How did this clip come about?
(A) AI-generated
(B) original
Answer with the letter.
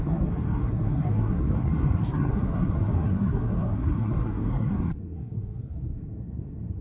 A